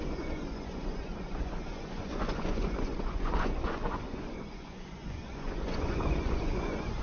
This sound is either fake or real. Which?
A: fake